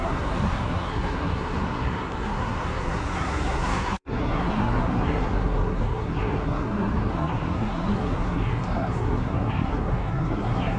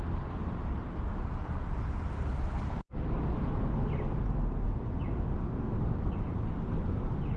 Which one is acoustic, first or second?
second